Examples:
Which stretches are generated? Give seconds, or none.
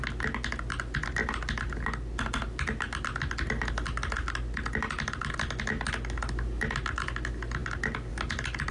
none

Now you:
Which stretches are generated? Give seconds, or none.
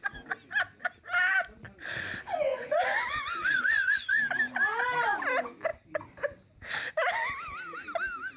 2.5-4.2 (vocoder, Vocos)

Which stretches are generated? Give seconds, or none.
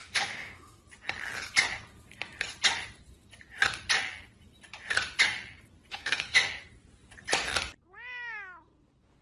0.0-0.8 (autoencoder, DAC-VAE); 5.9-6.5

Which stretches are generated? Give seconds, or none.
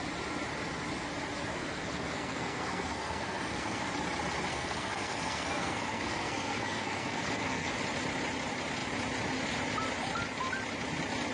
1.5-3.9 (codec, SNAC); 4.5-7.8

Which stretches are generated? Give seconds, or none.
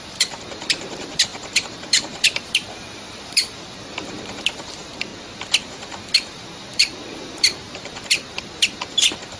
0.0-5.1 (vocoder, BigVGAN v2); 6.3-9.4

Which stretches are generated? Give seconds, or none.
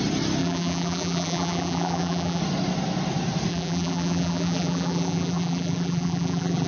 0.4-2.4 (vocoder, BigVGAN v2); 3.5-6.7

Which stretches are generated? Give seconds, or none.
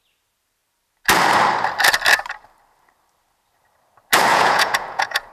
4.3-5.3 (vocoder, Vocos)